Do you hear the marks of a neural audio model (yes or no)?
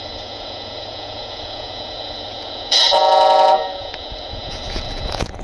yes